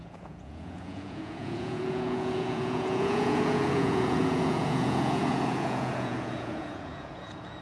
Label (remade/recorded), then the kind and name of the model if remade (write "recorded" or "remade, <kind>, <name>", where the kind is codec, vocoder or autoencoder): remade, vocoder, Vocos